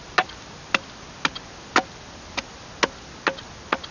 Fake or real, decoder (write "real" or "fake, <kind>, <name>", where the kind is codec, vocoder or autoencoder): real